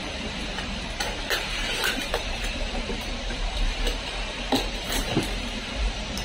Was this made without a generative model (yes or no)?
no